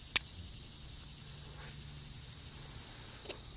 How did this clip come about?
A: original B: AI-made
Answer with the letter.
A